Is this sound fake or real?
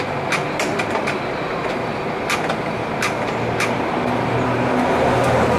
real